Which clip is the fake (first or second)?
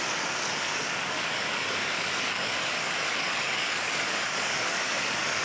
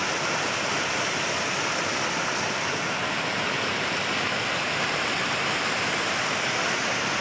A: first